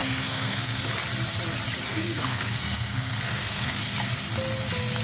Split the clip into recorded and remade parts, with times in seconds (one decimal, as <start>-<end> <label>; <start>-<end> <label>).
0.0-0.8 remade; 0.8-1.9 recorded; 1.9-3.8 remade; 3.8-5.0 recorded